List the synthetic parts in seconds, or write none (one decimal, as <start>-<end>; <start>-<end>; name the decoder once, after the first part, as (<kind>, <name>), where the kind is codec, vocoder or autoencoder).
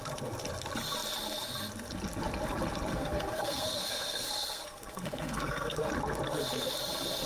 2.9-5.9 (codec, SNAC)